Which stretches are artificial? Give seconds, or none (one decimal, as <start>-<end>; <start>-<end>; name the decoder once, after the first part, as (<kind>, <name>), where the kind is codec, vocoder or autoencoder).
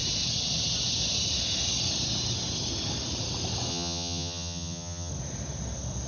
3.7-5.1 (vocoder, HiFi-GAN)